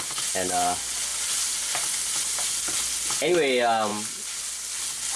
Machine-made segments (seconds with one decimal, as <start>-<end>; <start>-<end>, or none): none